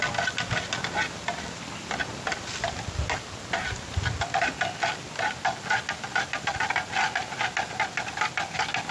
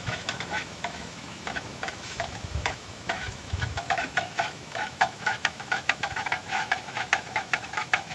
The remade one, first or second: second